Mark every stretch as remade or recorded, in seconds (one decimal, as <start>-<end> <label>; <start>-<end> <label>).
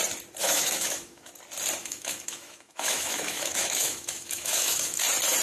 0.0-0.4 recorded; 0.4-1.3 remade; 1.3-1.8 recorded; 1.8-5.0 remade; 5.0-5.4 recorded